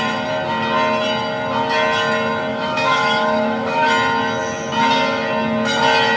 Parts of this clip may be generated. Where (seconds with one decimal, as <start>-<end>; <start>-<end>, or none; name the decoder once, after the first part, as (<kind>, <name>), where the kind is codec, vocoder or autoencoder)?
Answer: 2.5-3.9 (autoencoder, DAC-VAE)